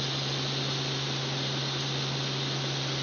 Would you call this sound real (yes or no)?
yes